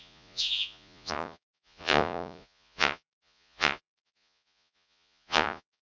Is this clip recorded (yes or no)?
no